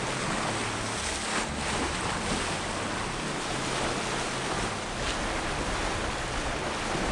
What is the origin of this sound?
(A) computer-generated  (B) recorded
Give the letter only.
B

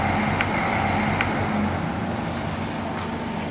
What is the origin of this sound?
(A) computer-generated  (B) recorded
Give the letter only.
B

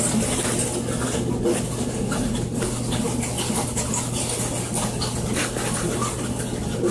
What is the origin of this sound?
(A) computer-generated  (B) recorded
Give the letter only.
B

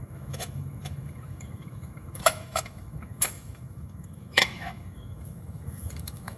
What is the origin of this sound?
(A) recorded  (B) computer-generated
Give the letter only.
B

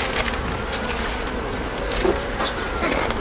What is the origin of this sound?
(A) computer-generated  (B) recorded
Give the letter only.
B